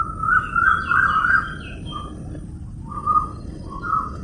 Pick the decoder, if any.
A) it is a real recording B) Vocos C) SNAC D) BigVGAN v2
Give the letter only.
A